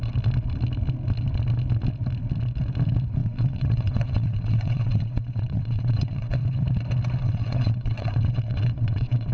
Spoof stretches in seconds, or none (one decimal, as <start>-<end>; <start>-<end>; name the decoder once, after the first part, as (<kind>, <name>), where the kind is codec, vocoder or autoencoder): 3.2-6.4 (vocoder, WaveNeXt); 7.2-9.3